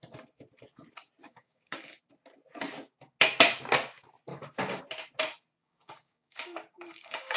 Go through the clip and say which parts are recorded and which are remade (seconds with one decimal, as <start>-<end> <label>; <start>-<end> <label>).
0.0-1.2 recorded; 1.2-2.0 remade; 2.0-4.3 recorded; 4.3-4.8 remade; 4.8-5.6 recorded; 5.6-7.4 remade